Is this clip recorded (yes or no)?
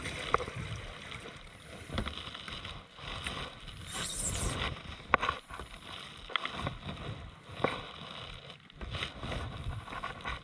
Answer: yes